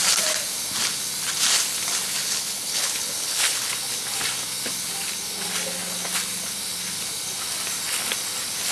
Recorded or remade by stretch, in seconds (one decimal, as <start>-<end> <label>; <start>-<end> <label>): 0.0-2.2 recorded; 2.2-3.7 remade; 3.7-8.7 recorded